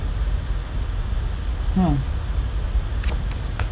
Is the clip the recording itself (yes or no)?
yes